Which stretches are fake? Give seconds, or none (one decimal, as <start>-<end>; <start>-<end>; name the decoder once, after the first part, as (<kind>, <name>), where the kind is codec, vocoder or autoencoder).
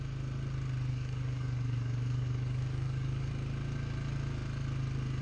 0.9-3.3 (codec, DAC)